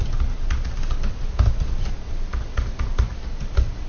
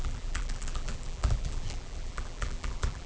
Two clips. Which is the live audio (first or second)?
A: first